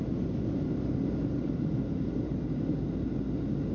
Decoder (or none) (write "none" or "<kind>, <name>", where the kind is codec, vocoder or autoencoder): none